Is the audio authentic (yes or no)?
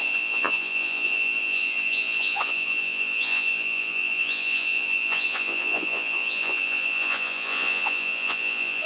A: no